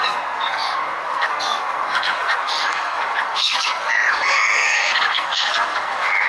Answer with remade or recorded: remade